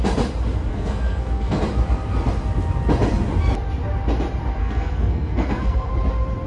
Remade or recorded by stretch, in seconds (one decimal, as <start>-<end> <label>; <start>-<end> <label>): 0.0-0.7 recorded; 0.7-1.6 remade; 1.6-4.6 recorded; 4.6-5.9 remade; 5.9-6.5 recorded